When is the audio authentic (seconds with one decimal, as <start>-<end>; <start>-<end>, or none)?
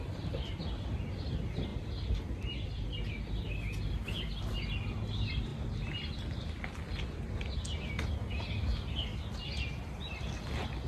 0.0-10.9